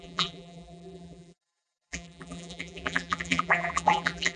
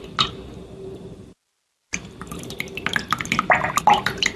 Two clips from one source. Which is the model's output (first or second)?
first